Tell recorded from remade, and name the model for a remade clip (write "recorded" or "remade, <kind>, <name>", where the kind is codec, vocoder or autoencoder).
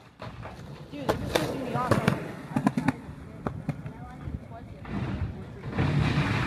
recorded